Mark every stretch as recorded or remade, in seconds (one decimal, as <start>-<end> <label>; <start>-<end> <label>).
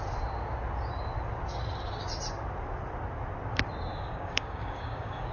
0.0-3.9 recorded; 3.9-5.3 remade